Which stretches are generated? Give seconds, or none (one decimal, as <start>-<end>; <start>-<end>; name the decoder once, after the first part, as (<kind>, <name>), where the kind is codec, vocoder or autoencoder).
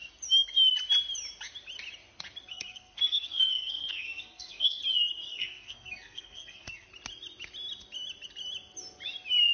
2.5-4.8 (codec, SNAC); 5.3-6.9